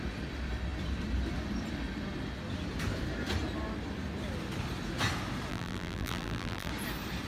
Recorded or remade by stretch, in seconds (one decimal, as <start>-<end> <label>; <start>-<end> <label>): 0.0-5.5 recorded; 5.5-6.7 remade; 6.7-7.3 recorded

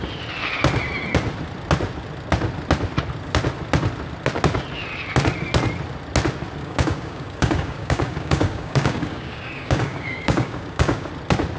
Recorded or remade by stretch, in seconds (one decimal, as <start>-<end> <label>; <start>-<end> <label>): 0.0-6.6 recorded; 6.6-11.1 remade; 11.1-11.6 recorded